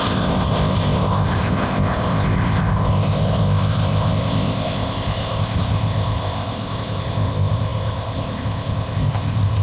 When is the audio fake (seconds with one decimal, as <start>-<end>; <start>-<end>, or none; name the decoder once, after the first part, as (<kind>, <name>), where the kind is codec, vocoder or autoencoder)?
0.0-9.6 (codec, ZipCodec)